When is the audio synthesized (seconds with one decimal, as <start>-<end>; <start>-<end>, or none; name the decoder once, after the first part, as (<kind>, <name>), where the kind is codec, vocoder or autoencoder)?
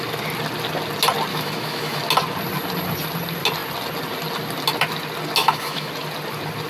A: 1.3-2.0 (autoencoder, DAC-VAE); 5.4-5.9